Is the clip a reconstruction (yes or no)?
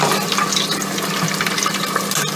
no